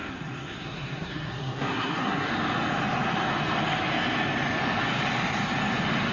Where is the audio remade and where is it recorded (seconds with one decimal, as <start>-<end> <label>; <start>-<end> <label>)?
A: 0.0-2.3 remade; 2.3-6.1 recorded